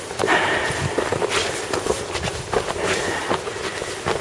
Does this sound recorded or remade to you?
recorded